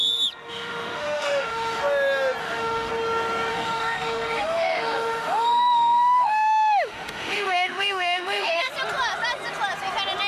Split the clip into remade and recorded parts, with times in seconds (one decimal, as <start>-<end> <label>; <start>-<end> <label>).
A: 0.0-0.5 recorded; 0.5-1.8 remade; 1.8-2.4 recorded; 2.4-2.9 remade; 2.9-3.5 recorded; 3.5-8.7 remade; 8.7-10.3 recorded